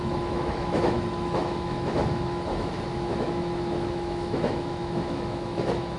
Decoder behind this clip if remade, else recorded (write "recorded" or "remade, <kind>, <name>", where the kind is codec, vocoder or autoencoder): remade, autoencoder, DAC-VAE